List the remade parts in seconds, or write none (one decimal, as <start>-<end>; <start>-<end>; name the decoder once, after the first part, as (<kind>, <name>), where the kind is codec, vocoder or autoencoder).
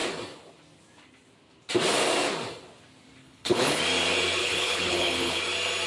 3.2-3.8 (codec, HILCodec); 4.4-5.4